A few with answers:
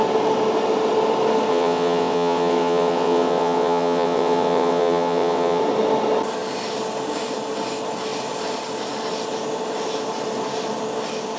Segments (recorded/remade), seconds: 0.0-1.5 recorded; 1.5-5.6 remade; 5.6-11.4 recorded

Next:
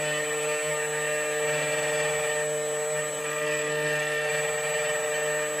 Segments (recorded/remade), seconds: 0.0-3.2 recorded; 3.2-4.3 remade; 4.3-5.6 recorded

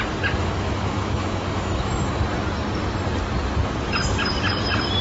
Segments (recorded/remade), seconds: 0.0-0.4 recorded; 0.4-2.2 remade; 2.2-5.0 recorded

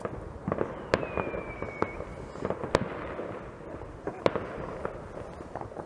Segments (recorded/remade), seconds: 0.0-5.9 recorded